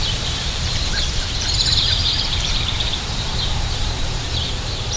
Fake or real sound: fake